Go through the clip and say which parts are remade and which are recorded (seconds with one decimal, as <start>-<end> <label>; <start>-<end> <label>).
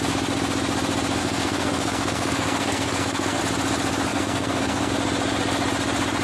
0.0-1.2 recorded; 1.2-3.4 remade; 3.4-4.1 recorded; 4.1-4.9 remade; 4.9-6.2 recorded